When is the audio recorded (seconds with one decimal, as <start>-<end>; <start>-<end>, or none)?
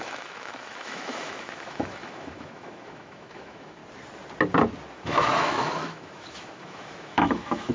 3.8-4.9